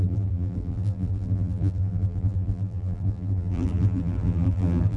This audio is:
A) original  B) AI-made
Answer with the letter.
B